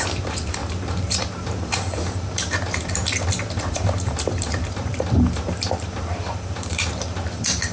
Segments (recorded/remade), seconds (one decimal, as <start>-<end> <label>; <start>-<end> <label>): 0.0-3.0 remade; 3.0-3.6 recorded; 3.6-7.7 remade